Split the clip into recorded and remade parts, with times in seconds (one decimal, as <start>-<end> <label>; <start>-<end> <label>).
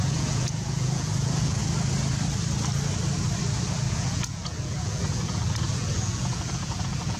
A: 0.0-1.6 remade; 1.6-3.7 recorded; 3.7-7.2 remade